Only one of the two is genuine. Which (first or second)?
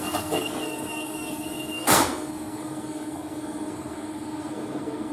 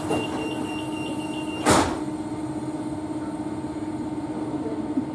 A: second